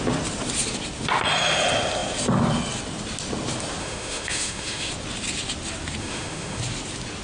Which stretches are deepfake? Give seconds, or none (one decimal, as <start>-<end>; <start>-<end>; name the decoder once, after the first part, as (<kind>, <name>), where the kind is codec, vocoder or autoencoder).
3.8-4.9 (autoencoder, DAC-VAE); 6.0-6.6

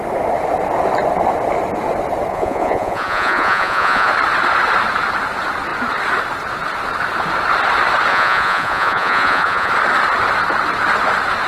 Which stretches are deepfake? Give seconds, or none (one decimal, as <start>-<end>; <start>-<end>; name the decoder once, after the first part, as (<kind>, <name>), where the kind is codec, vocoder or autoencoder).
2.3-4.1 (vocoder, Vocos); 8.1-9.7

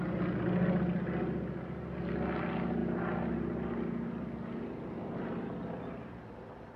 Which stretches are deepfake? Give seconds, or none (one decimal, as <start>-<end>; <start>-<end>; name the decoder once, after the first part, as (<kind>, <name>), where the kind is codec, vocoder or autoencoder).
none

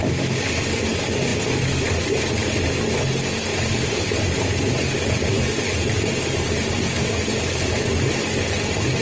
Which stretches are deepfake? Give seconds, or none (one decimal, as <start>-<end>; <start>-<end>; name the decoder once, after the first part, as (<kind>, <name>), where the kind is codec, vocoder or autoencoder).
3.5-5.3 (vocoder, BigVGAN v2); 7.3-7.9

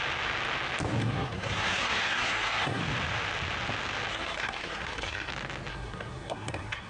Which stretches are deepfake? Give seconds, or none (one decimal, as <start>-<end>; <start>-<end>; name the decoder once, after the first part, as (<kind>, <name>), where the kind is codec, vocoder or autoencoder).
1.0-2.8 (codec, SNAC); 4.1-5.3; 5.7-6.9

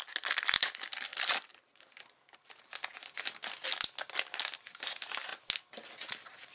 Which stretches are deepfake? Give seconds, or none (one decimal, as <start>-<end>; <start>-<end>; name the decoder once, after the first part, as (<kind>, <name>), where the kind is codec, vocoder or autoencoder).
none